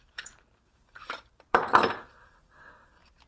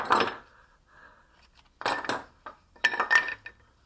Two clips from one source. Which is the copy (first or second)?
first